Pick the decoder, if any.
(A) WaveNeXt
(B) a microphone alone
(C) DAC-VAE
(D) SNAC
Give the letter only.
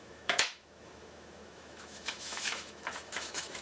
C